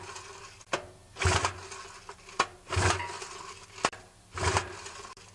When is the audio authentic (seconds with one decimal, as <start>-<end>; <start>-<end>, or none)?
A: 0.0-5.3